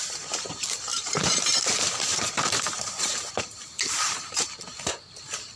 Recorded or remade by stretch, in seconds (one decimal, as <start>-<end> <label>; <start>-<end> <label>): 0.0-5.6 remade

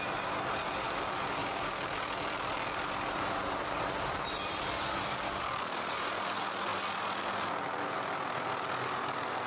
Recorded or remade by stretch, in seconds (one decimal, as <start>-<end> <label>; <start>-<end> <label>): 0.0-1.4 recorded; 1.4-5.9 remade; 5.9-6.7 recorded; 6.7-7.2 remade; 7.2-9.5 recorded

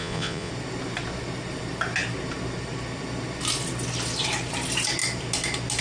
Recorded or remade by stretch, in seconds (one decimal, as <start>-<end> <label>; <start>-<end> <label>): 0.0-0.5 remade; 0.5-5.8 recorded